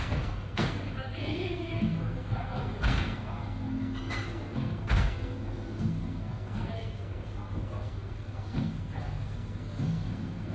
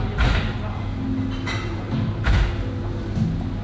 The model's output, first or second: first